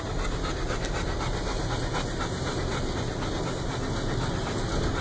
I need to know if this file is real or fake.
real